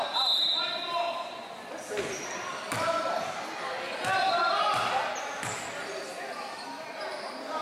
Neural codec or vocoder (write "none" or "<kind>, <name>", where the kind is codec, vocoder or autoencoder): none